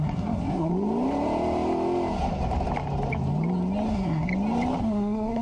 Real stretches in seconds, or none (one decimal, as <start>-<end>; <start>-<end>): 0.7-3.9; 4.3-4.8